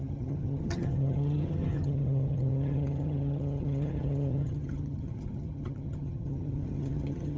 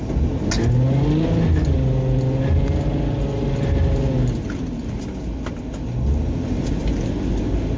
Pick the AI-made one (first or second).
first